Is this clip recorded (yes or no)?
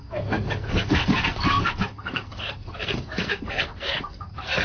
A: no